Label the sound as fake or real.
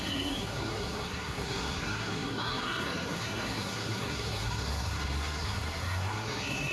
fake